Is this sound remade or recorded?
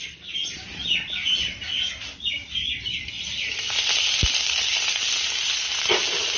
recorded